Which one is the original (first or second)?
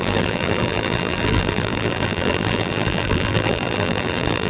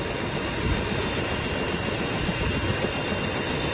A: second